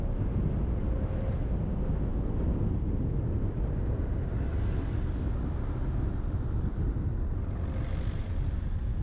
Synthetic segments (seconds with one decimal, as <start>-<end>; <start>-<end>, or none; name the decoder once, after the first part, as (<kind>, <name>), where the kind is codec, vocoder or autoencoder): none